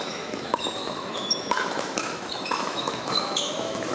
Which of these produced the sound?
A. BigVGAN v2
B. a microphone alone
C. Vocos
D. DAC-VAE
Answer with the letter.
D